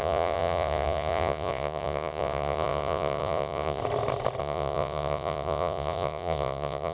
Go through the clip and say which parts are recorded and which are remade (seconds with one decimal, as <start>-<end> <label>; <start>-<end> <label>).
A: 0.0-3.8 remade; 3.8-4.4 recorded; 4.4-6.9 remade